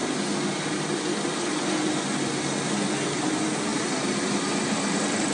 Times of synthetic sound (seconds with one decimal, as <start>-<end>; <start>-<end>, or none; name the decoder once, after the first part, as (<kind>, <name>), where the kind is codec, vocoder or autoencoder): 3.2-5.3 (vocoder, BigVGAN v2)